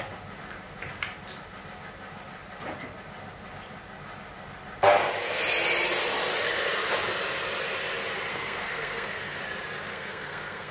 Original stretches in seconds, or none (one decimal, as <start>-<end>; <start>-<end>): 0.0-8.3; 9.4-9.9